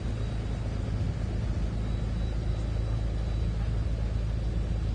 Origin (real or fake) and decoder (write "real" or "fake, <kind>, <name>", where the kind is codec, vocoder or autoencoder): real